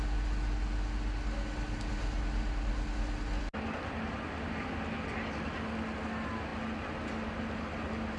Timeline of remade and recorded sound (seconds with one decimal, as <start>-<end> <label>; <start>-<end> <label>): 0.0-8.2 recorded